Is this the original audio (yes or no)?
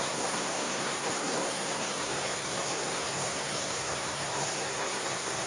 no